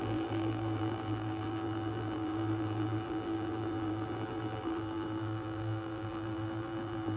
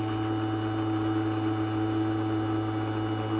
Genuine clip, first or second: second